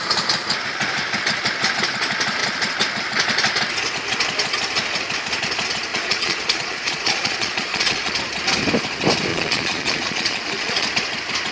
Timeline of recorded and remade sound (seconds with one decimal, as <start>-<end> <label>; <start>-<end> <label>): 0.0-5.9 recorded; 5.9-8.1 remade; 8.1-9.3 recorded; 9.3-10.9 remade; 10.9-11.5 recorded